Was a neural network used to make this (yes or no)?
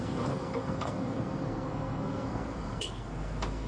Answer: yes